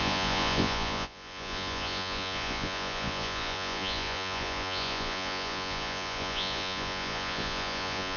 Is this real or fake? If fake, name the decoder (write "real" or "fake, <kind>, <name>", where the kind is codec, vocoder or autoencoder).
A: fake, vocoder, Vocos